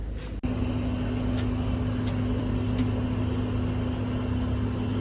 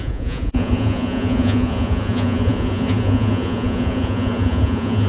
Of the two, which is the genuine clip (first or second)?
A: first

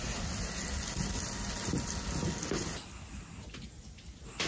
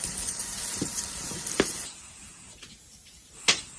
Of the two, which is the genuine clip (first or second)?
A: first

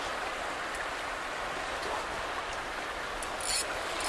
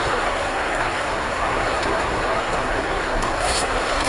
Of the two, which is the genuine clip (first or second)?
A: first